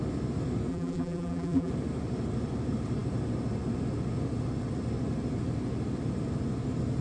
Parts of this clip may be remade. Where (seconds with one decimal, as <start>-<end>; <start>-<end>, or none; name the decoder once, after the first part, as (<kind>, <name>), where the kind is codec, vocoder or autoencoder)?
0.7-1.7 (vocoder, BigVGAN v2)